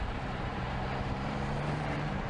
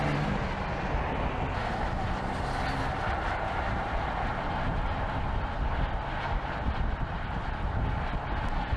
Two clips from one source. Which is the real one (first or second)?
second